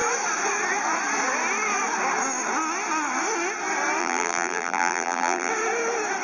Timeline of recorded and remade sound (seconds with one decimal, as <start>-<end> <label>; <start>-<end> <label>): 0.0-4.0 recorded; 4.0-5.5 remade; 5.5-6.2 recorded